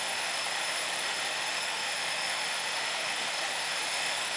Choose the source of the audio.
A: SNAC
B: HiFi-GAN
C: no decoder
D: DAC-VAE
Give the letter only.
D